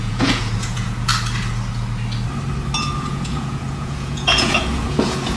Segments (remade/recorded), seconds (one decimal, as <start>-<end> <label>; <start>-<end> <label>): 0.0-1.1 remade; 1.1-3.0 recorded; 3.0-5.4 remade